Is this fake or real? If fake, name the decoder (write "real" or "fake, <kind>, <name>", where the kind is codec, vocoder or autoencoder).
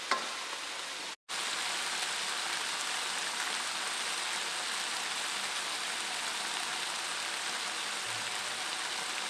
real